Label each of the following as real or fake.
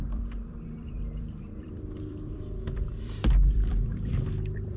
fake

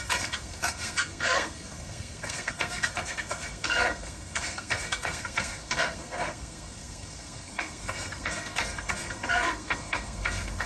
fake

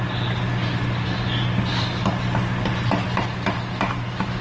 real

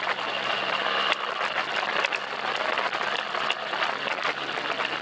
real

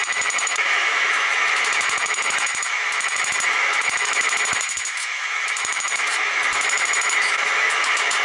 fake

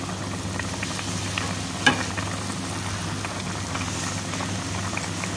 real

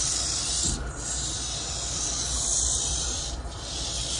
fake